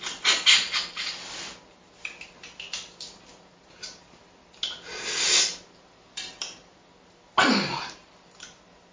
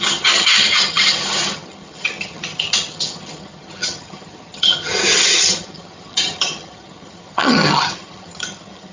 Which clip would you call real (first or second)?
first